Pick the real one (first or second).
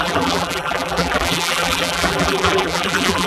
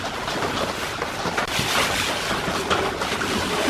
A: second